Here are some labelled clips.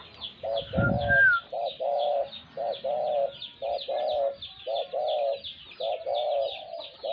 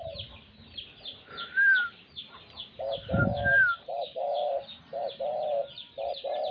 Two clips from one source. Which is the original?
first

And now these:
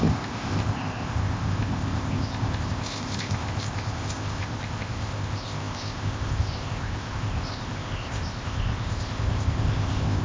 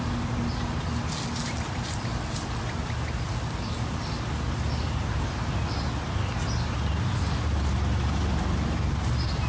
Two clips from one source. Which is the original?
second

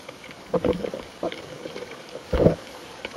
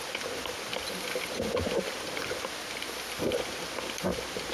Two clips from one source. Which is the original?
second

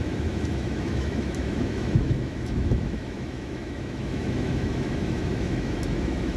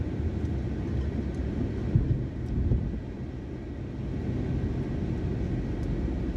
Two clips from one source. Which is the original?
second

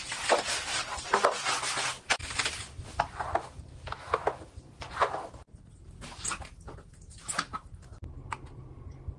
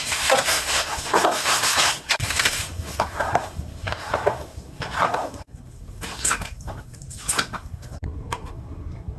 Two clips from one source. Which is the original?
first